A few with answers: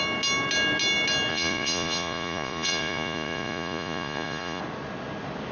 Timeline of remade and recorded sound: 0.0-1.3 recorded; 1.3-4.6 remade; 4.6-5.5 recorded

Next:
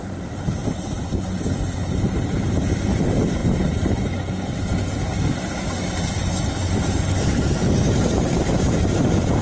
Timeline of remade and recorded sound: 0.0-9.4 remade

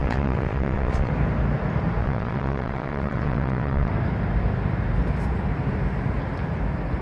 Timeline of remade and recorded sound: 0.0-1.1 remade; 1.1-2.0 recorded; 2.0-3.9 remade; 3.9-7.0 recorded

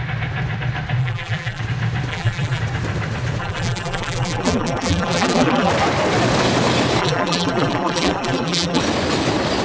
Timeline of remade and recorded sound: 0.0-1.0 recorded; 1.0-1.6 remade; 1.6-2.1 recorded; 2.1-2.6 remade; 2.6-3.4 recorded; 3.4-5.7 remade; 5.7-7.0 recorded; 7.0-8.8 remade; 8.8-9.6 recorded

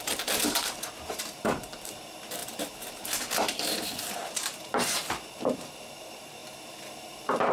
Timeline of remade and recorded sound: 0.0-7.5 remade